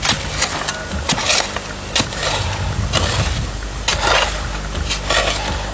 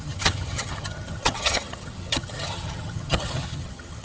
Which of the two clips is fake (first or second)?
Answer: second